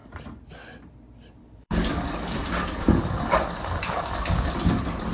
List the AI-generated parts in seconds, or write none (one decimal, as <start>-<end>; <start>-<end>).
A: 1.4-4.5